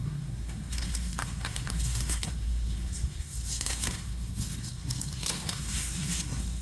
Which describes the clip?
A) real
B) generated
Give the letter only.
B